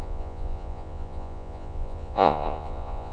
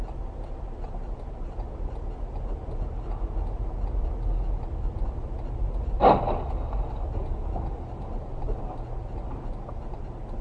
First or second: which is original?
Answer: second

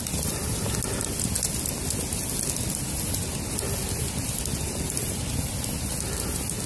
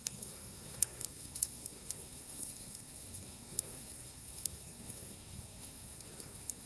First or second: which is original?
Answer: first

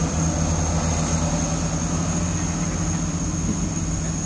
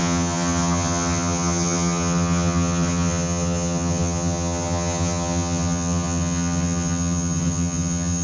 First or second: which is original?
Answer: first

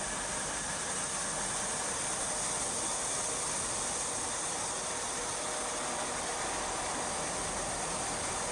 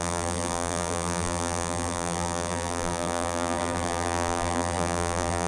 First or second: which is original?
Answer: first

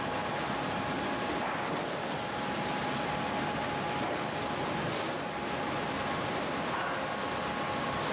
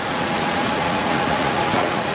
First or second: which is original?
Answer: first